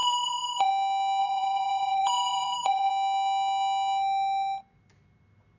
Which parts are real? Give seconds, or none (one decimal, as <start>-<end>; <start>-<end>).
0.7-1.2; 2.9-5.6